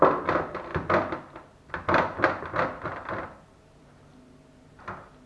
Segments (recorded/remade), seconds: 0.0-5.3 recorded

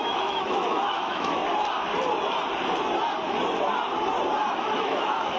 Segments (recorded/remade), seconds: 0.0-1.4 remade; 1.4-4.6 recorded; 4.6-5.4 remade

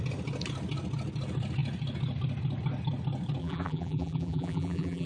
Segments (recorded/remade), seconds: 0.0-3.4 recorded; 3.4-5.1 remade

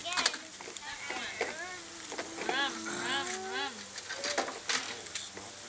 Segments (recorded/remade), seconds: 0.0-5.7 recorded

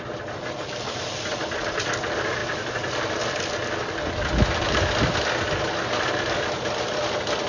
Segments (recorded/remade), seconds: 0.0-7.5 recorded

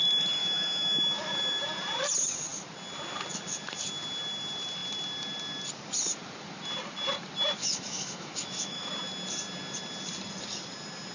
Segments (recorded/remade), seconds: 0.0-0.4 recorded; 0.4-1.6 remade; 1.6-7.6 recorded; 7.6-8.9 remade; 8.9-11.1 recorded

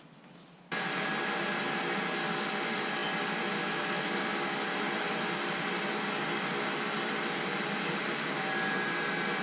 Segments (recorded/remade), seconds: 0.0-9.4 recorded